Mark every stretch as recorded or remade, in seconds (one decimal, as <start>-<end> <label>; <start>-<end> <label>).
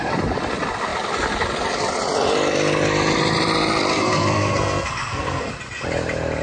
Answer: 0.0-3.9 recorded; 3.9-5.5 remade; 5.5-6.4 recorded